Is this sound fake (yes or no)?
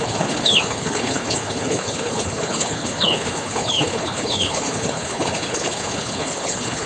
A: yes